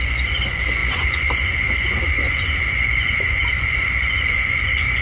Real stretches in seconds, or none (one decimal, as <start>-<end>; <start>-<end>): none